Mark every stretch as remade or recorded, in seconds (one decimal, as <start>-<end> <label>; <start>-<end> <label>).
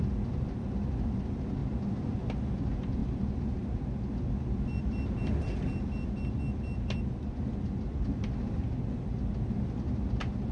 0.0-10.5 recorded